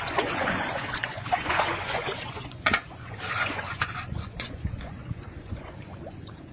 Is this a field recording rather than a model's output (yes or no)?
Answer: no